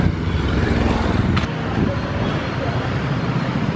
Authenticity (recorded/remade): recorded